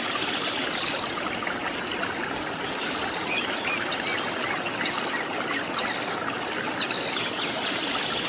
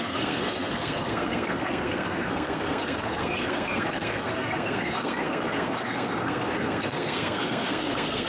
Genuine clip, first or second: first